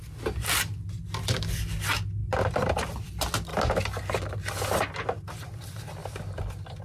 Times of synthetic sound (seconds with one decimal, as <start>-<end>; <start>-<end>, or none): 2.2-3.1; 6.0-6.8